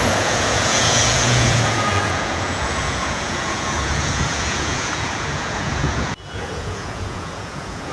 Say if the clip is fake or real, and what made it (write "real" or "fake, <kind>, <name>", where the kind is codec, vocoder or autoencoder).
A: fake, vocoder, Vocos